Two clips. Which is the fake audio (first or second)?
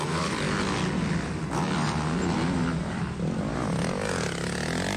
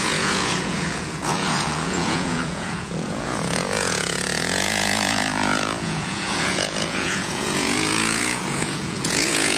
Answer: second